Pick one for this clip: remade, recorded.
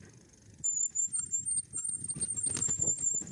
recorded